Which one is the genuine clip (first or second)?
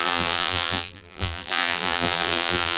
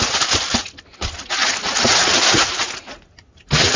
second